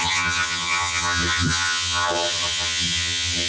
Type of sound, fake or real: fake